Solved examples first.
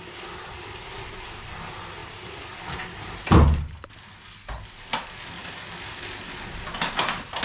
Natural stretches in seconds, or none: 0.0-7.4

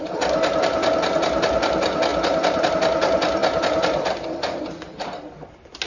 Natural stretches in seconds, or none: 0.0-5.9

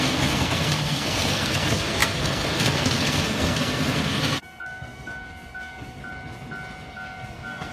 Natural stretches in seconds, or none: 6.0-6.9

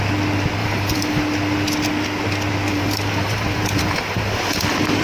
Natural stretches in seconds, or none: 0.0-0.6; 1.2-2.7